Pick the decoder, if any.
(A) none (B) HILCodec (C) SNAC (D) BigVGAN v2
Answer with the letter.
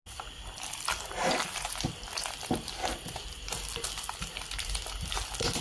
A